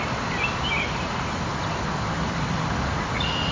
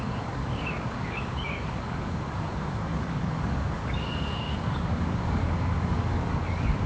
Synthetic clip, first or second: second